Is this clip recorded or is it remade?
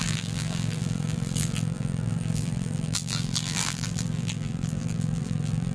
remade